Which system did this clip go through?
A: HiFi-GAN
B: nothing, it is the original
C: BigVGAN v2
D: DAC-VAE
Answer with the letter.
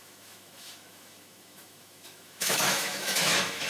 D